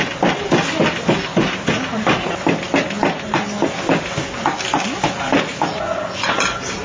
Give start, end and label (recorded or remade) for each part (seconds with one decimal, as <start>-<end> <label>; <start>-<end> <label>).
0.0-6.8 recorded